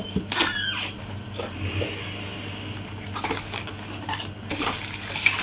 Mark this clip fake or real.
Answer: real